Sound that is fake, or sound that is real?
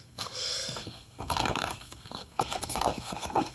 fake